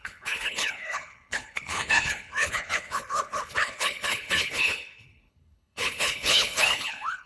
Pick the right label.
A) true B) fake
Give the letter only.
B